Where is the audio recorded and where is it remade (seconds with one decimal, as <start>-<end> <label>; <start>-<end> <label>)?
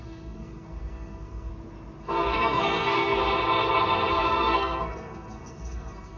0.0-1.5 remade; 1.5-2.0 recorded; 2.0-3.2 remade; 3.2-4.1 recorded; 4.1-6.2 remade